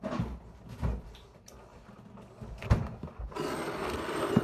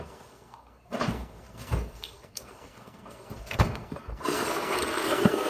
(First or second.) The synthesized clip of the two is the second